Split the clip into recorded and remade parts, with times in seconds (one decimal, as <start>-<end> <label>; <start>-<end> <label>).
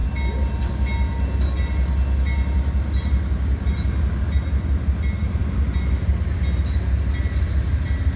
0.0-8.2 recorded